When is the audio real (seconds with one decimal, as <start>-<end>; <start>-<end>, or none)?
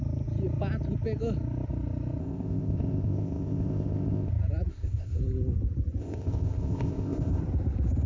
0.0-2.2; 4.3-4.7; 5.2-6.0; 7.4-8.1